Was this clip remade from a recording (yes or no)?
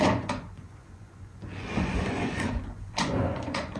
yes